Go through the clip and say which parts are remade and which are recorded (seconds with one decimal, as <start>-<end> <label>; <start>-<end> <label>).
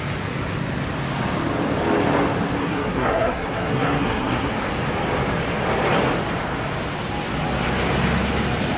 0.0-2.6 recorded; 2.6-4.5 remade; 4.5-8.8 recorded